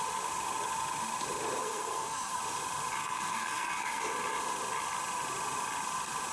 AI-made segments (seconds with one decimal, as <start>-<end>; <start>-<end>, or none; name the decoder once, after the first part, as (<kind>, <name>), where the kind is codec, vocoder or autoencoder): 1.6-2.4 (codec, SNAC); 3.0-4.0